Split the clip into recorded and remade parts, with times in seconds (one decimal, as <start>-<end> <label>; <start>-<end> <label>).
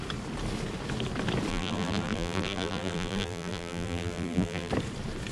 0.0-1.5 recorded; 1.5-4.7 remade; 4.7-5.3 recorded